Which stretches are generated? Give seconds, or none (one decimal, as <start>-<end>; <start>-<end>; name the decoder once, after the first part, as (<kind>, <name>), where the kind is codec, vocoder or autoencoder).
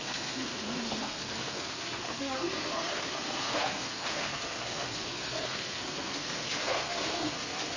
0.0-7.8 (codec, SNAC)